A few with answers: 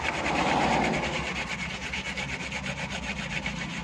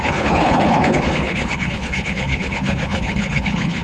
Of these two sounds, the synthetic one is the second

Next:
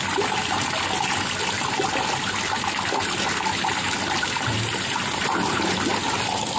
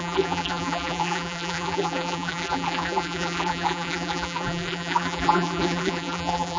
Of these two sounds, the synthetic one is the second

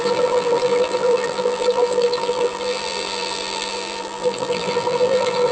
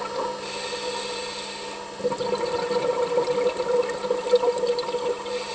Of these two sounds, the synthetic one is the first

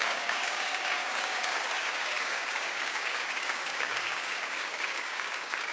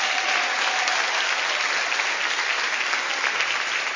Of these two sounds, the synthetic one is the first